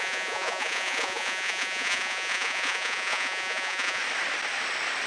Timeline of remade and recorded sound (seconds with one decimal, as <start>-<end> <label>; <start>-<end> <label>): 0.0-4.0 remade; 4.0-5.1 recorded